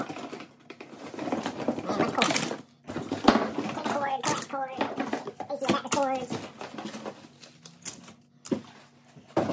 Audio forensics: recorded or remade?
recorded